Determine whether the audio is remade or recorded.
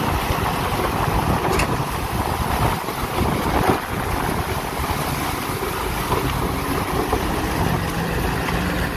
recorded